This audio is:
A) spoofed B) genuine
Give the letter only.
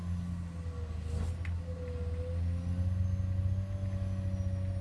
B